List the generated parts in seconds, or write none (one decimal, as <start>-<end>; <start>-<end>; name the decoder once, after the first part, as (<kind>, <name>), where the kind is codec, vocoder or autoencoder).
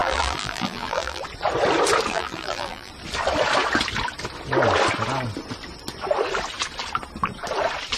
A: 0.0-1.2 (vocoder, BigVGAN v2); 2.1-2.9